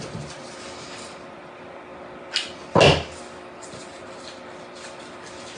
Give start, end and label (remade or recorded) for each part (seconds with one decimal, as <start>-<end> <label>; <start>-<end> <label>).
0.0-5.6 recorded